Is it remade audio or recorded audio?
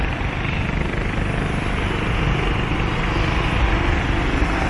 recorded